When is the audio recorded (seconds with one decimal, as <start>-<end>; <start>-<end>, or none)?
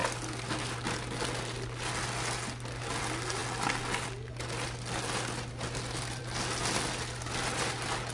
0.0-8.1